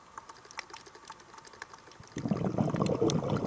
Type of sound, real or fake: real